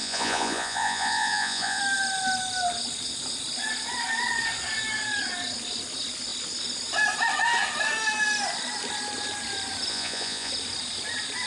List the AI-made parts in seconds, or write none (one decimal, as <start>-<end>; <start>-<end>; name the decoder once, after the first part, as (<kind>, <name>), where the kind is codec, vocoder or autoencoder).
0.0-1.8 (vocoder, Vocos); 9.9-10.5